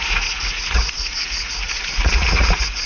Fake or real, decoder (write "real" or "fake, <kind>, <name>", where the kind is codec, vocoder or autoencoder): fake, vocoder, Vocos